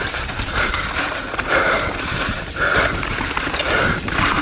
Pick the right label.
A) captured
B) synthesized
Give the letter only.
B